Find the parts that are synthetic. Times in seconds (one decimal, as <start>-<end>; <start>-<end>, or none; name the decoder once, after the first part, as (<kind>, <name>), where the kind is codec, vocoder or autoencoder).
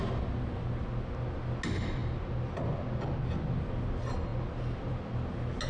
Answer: none